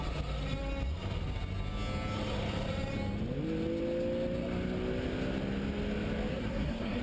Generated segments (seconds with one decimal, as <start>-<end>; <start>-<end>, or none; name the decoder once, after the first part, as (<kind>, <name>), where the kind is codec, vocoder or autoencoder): 6.3-7.0 (codec, SNAC)